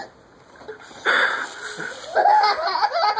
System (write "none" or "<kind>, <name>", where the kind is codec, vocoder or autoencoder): none